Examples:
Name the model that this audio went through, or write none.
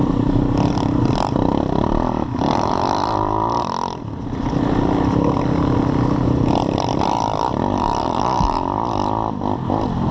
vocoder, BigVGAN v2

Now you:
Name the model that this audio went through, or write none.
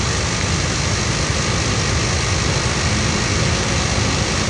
none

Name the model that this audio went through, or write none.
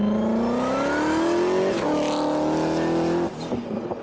none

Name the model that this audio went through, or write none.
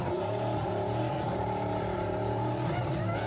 vocoder, BigVGAN v2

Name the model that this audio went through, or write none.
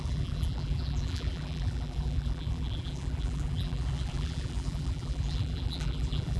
vocoder, BigVGAN v2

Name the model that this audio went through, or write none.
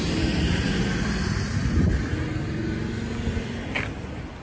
none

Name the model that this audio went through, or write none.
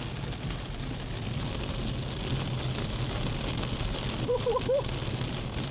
none